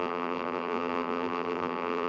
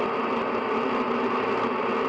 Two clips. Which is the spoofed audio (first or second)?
first